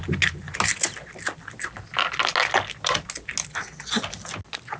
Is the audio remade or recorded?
recorded